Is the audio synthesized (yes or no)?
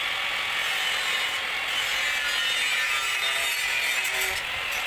no